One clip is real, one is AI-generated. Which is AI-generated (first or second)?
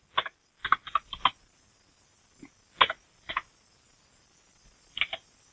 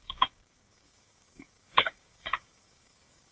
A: second